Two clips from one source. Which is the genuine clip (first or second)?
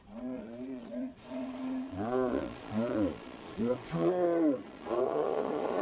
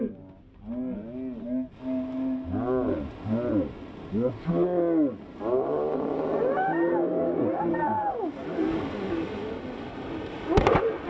second